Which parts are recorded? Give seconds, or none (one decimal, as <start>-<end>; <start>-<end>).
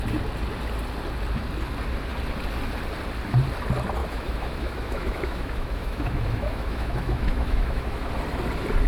0.0-4.0; 8.1-8.9